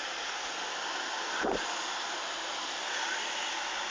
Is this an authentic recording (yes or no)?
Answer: yes